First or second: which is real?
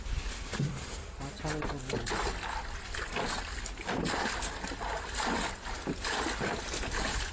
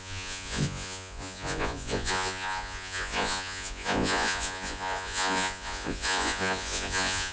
first